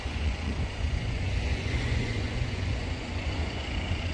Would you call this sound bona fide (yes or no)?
no